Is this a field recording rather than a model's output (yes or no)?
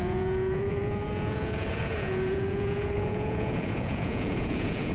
no